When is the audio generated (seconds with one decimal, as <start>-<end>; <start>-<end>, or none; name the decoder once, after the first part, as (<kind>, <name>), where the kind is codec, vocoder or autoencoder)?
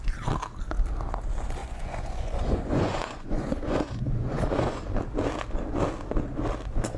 1.6-4.8 (vocoder, Vocos)